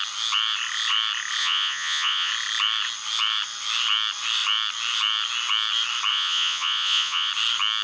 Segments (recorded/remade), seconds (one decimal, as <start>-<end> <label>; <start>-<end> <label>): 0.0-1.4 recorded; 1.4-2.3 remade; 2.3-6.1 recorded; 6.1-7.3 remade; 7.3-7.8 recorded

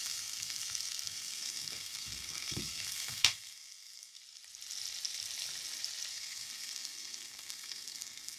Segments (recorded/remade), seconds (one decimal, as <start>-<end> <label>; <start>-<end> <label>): 0.0-4.2 remade; 4.2-6.1 recorded; 6.1-8.4 remade

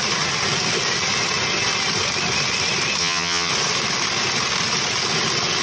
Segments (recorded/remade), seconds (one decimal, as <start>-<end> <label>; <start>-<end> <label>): 0.0-3.0 recorded; 3.0-3.5 remade; 3.5-5.6 recorded

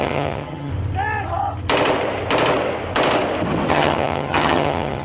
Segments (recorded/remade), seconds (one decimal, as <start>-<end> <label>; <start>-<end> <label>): 0.0-0.7 remade; 0.7-3.7 recorded; 3.7-5.0 remade

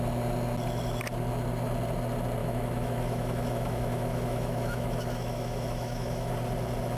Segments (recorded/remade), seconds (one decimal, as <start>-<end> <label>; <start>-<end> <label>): 0.0-2.4 recorded; 2.4-6.3 remade; 6.3-7.0 recorded

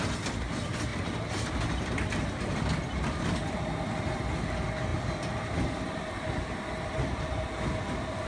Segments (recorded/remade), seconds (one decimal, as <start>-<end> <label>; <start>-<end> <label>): 0.0-8.3 recorded

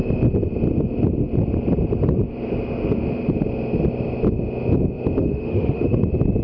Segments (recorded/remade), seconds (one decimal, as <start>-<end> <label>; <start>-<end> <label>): 0.0-5.2 recorded; 5.2-6.0 remade; 6.0-6.4 recorded

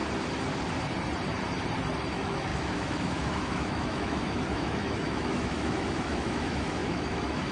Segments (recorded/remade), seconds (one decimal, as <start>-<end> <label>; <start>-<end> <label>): 0.0-2.1 recorded; 2.1-7.5 remade